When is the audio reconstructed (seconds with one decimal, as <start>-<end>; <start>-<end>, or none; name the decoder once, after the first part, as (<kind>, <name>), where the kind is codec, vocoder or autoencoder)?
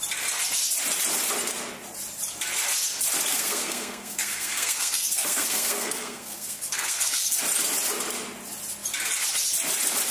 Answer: 3.3-7.4 (codec, SNAC)